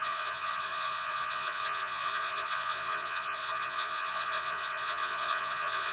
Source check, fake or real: fake